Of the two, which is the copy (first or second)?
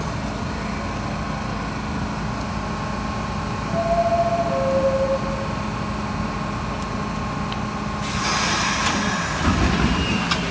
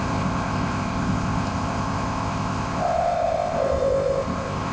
second